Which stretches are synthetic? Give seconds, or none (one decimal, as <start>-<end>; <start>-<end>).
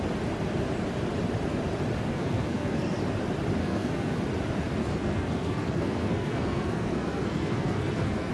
2.1-3.0; 3.6-4.2; 4.8-8.3